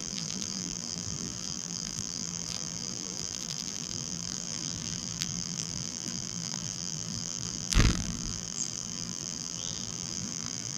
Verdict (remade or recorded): remade